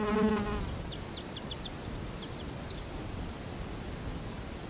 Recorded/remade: recorded